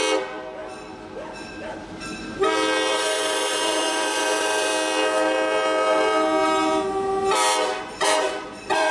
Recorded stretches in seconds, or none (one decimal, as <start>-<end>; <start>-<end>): 0.0-2.9; 4.7-7.8